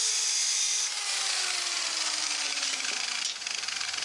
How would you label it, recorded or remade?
remade